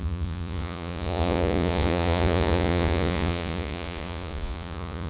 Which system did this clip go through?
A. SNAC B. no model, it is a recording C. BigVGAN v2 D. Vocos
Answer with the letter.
D